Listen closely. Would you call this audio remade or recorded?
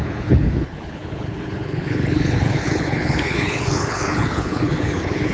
remade